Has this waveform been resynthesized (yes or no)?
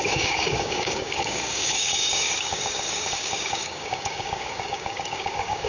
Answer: yes